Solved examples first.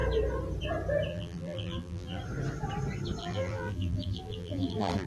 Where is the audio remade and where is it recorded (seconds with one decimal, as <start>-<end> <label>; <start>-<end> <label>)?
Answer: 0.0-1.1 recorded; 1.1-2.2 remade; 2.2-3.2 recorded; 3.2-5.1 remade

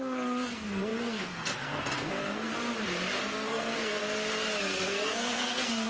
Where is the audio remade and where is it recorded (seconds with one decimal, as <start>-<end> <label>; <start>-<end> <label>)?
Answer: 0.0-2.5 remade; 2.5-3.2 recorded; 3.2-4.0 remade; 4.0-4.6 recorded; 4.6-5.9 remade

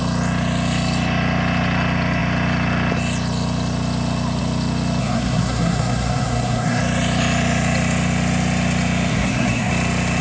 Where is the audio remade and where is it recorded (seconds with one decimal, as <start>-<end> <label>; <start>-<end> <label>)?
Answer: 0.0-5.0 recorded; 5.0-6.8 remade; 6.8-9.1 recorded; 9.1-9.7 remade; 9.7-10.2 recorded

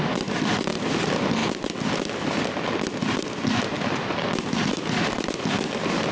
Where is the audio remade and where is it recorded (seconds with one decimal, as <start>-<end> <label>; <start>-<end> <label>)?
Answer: 0.0-6.1 recorded

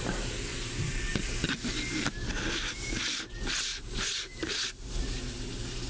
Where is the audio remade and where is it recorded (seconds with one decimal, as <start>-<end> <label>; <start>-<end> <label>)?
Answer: 0.0-3.7 recorded; 3.7-5.2 remade; 5.2-5.9 recorded

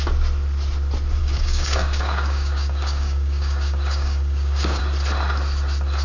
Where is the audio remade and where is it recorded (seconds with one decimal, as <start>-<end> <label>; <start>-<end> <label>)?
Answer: 0.0-1.2 recorded; 1.2-4.8 remade; 4.8-6.0 recorded

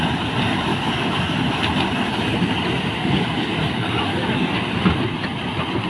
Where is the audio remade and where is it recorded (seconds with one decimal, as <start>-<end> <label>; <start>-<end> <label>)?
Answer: 0.0-0.7 recorded; 0.7-1.4 remade; 1.4-3.0 recorded; 3.0-4.6 remade; 4.6-5.9 recorded